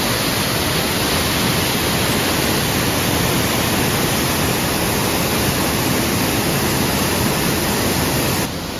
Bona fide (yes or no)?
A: yes